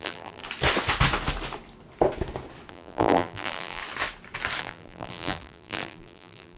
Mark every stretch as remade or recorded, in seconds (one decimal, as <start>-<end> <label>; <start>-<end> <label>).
0.0-0.4 remade; 0.4-2.7 recorded; 2.7-3.8 remade; 3.8-4.6 recorded; 4.6-6.6 remade